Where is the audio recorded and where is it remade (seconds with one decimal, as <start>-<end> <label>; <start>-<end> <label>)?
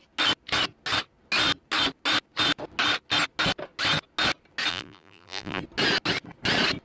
0.0-4.7 recorded; 4.7-5.6 remade; 5.6-6.8 recorded